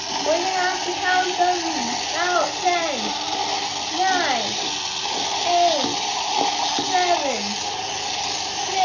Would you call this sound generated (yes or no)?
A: no